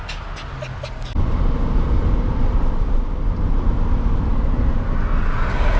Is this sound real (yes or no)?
yes